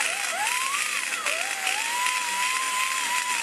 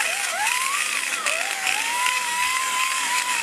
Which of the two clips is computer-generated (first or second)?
second